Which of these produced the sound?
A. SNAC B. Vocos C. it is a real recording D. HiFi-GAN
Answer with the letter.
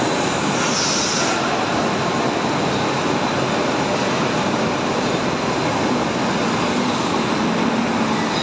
C